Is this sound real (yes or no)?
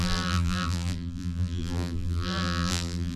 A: no